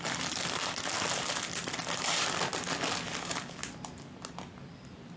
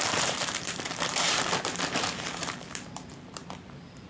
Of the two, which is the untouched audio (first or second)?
first